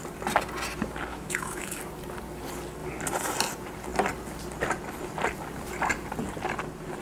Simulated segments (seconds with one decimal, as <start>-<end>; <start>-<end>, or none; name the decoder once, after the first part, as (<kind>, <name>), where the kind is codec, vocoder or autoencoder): 1.1-1.8 (autoencoder, DAC-VAE)

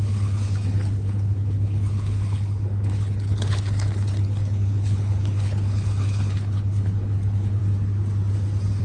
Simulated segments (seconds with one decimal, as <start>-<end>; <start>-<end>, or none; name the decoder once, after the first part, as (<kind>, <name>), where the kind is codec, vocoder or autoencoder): 0.0-7.6 (codec, HILCodec)

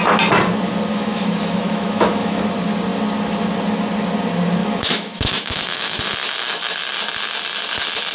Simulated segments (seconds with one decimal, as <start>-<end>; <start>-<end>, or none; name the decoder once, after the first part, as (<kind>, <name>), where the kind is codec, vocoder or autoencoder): 0.9-2.4 (autoencoder, DAC-VAE); 4.6-6.0

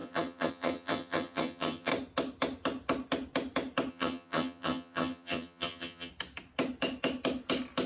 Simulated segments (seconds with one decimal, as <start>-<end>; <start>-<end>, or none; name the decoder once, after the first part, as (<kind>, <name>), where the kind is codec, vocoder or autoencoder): 0.0-1.9 (vocoder, HiFi-GAN); 3.9-6.1

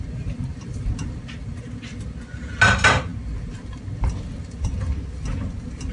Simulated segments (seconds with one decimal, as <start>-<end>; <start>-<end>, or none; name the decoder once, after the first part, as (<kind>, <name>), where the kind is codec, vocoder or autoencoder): none

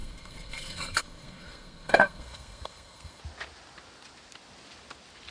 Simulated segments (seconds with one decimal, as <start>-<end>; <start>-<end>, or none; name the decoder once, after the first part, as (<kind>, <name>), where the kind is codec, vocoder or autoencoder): 0.0-3.2 (codec, SNAC)

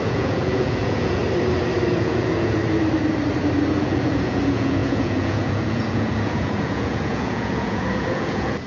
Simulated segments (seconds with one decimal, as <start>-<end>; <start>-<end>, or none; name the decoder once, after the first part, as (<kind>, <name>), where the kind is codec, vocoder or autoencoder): 0.0-1.2 (vocoder, Vocos); 1.9-2.6; 3.8-8.7

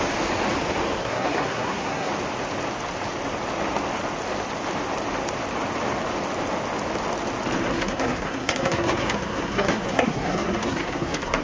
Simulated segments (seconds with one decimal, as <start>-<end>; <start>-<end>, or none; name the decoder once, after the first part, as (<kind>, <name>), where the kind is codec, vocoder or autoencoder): 1.0-2.1 (codec, SNAC); 7.7-11.4